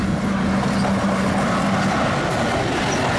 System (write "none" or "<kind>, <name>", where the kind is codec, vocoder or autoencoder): none